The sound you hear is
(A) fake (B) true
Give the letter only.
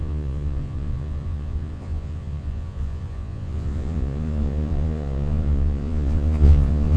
A